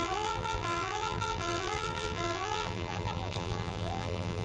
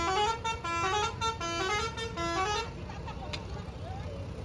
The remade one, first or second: first